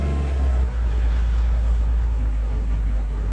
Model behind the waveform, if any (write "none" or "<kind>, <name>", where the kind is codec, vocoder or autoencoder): codec, SNAC